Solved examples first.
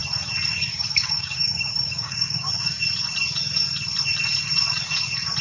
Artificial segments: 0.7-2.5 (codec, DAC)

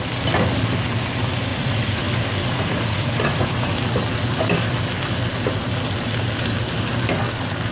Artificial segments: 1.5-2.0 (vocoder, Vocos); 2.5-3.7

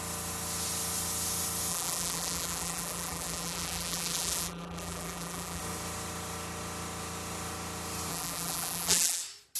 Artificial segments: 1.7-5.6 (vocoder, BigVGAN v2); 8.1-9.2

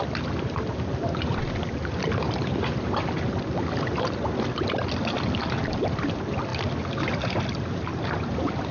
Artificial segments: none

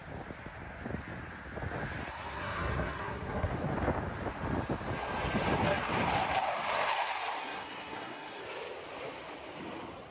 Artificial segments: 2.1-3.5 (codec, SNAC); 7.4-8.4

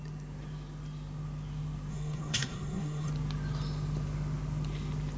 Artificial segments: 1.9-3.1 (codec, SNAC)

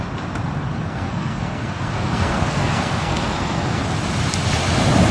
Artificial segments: 0.7-3.8 (codec, SNAC)